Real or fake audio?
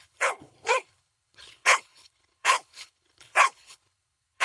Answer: fake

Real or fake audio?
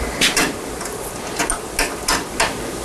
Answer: real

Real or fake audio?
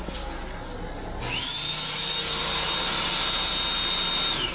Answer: real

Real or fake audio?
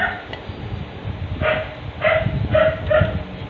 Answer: real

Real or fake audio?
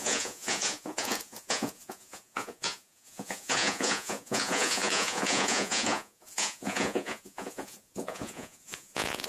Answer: fake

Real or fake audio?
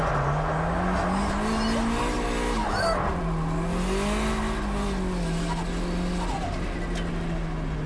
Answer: real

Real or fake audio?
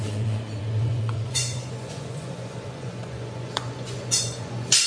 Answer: fake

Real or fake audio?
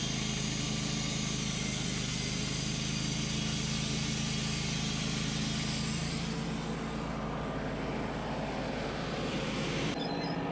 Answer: real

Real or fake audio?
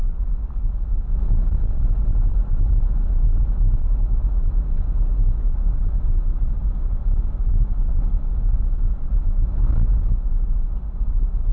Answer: real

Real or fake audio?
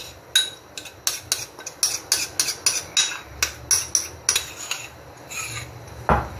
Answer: real